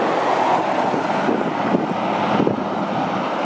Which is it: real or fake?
real